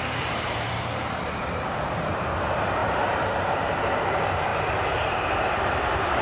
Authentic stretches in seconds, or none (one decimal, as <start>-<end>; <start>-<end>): none